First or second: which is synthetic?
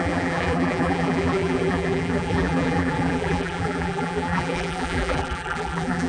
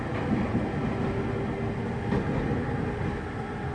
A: first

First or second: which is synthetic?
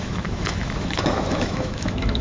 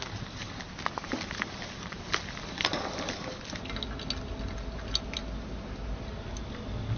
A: first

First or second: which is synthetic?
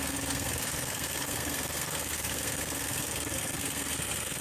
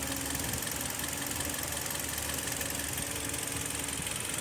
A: first